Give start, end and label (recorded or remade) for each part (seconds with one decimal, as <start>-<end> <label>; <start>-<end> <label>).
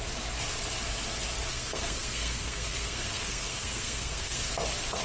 0.0-1.5 recorded; 1.5-4.5 remade; 4.5-5.0 recorded